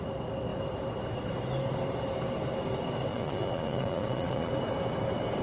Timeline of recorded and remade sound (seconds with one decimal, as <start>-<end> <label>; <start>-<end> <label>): 0.0-3.1 recorded; 3.1-4.5 remade; 4.5-5.4 recorded